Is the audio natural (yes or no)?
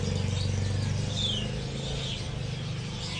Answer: yes